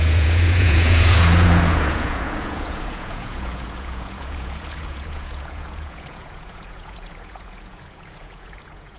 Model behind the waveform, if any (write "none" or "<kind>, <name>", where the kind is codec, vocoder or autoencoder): vocoder, Vocos